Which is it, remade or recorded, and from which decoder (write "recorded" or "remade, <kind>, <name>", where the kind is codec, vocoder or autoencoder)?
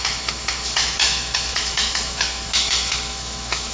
remade, autoencoder, DAC-VAE